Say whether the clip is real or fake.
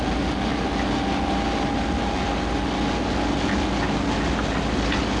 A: real